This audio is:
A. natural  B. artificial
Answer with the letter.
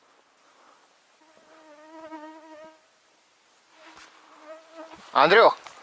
A